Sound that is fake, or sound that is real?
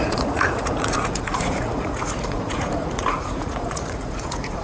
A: fake